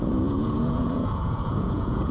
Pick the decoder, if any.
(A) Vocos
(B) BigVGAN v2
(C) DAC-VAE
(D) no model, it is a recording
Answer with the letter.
A